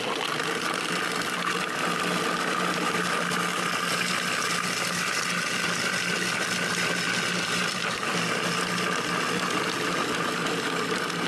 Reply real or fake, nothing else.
real